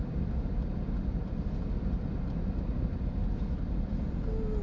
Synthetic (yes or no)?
no